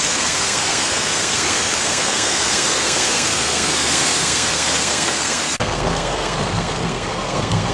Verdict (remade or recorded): remade